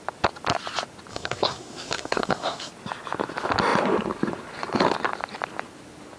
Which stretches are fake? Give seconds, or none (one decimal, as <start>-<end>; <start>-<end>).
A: 1.1-2.7